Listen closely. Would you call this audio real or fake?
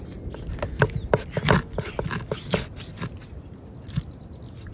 real